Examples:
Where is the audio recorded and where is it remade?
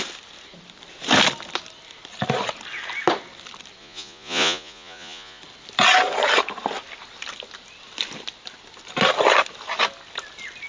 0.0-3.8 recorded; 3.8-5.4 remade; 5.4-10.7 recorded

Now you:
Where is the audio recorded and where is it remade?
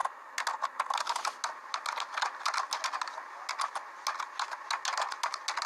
0.0-5.7 recorded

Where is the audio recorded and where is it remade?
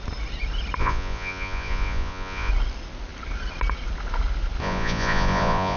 0.0-0.8 recorded; 0.8-2.5 remade; 2.5-4.6 recorded; 4.6-5.8 remade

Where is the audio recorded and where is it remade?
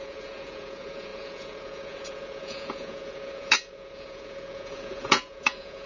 0.0-5.9 remade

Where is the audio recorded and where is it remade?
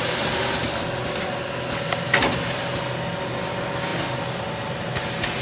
0.0-5.4 recorded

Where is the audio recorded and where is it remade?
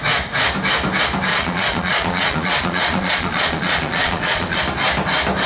0.0-1.3 recorded; 1.3-4.6 remade; 4.6-5.5 recorded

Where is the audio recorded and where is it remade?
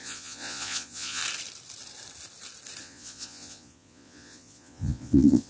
0.0-1.2 remade; 1.2-2.8 recorded; 2.8-5.5 remade